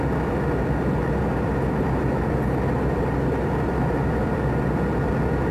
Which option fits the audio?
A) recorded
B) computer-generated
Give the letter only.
A